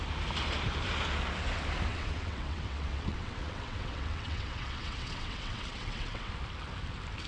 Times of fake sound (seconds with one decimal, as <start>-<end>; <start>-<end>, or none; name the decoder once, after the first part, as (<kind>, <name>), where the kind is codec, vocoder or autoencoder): 1.9-6.3 (vocoder, WaveNeXt)